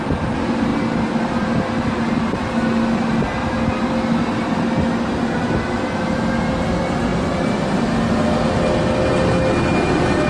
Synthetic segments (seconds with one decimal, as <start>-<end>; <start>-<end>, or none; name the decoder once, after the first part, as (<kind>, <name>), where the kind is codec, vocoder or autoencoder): none